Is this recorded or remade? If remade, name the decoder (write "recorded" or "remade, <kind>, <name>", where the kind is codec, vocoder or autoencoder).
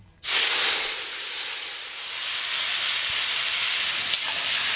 recorded